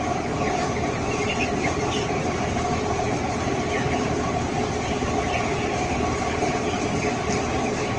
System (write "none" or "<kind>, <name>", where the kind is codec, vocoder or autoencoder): none